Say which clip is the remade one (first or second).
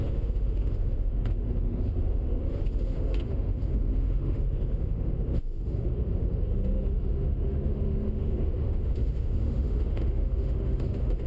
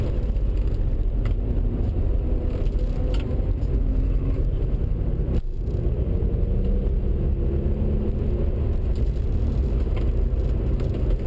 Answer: first